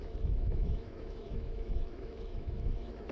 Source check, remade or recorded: remade